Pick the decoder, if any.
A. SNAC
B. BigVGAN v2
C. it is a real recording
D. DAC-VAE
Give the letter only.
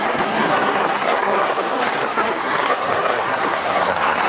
A